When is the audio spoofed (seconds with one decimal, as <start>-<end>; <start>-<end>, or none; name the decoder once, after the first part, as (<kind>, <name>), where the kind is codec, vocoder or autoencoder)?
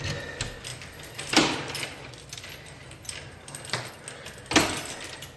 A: 0.7-3.9 (vocoder, BigVGAN v2)